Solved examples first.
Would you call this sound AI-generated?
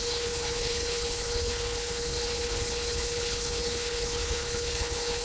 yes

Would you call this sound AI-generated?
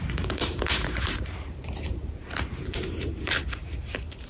yes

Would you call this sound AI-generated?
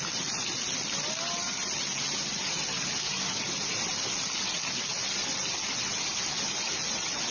no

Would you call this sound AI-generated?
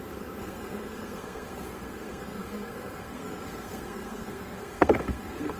yes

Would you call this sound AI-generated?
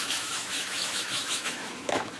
yes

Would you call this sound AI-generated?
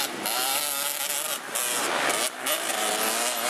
no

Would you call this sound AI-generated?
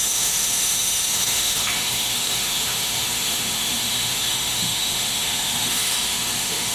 yes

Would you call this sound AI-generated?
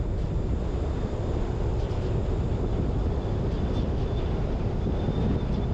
no